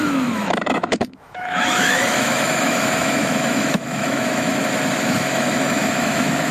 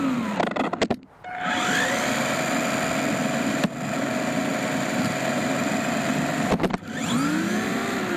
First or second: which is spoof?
first